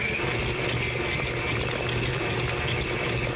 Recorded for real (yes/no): yes